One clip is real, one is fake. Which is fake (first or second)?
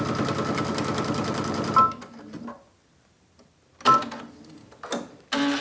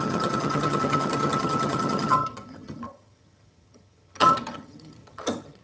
second